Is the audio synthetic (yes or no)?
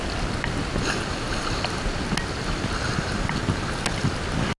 no